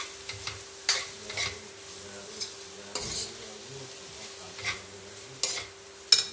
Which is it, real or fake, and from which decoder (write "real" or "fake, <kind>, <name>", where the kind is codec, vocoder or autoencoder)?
real